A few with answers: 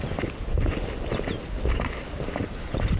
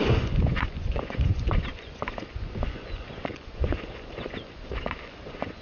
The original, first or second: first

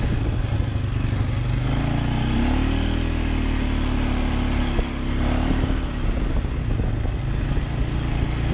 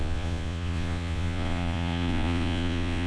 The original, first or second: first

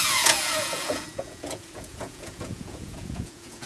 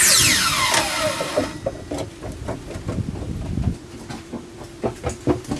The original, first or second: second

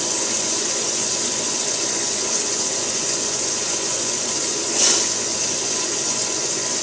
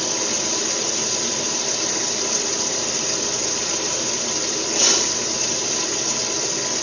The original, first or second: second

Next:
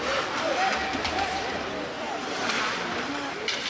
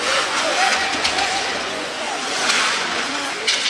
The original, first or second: first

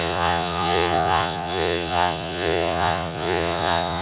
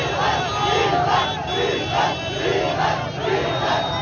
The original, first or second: second